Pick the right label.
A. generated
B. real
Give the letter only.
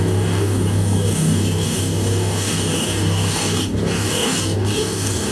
A